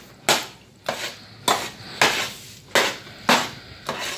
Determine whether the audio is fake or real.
real